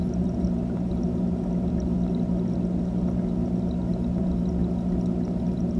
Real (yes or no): yes